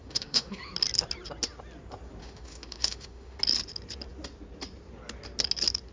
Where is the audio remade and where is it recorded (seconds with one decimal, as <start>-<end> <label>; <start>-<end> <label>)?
0.0-0.6 remade; 0.6-2.2 recorded; 2.2-3.4 remade; 3.4-5.9 recorded